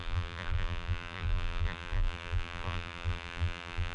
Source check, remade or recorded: remade